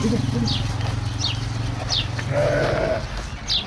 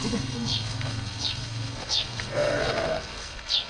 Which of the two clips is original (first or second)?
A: first